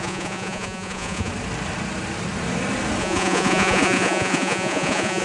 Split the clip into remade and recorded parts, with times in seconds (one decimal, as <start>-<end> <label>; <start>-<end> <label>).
0.0-1.3 remade; 1.3-3.0 recorded; 3.0-5.2 remade